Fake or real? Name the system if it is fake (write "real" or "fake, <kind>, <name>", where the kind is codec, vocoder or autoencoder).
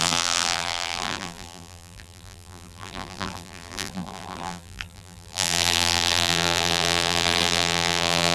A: fake, vocoder, BigVGAN v2